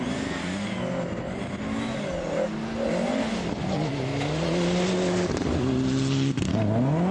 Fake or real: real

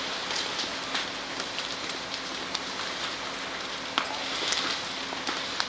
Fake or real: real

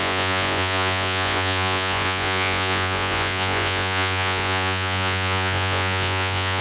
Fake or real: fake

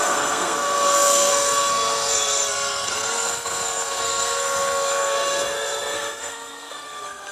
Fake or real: fake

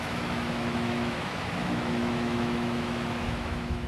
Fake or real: fake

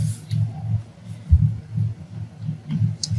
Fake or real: real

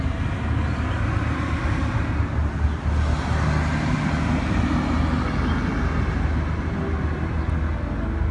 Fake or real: real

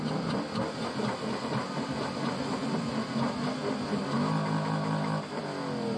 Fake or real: real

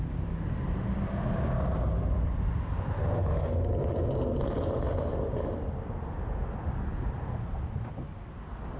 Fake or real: real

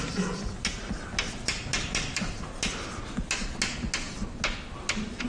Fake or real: real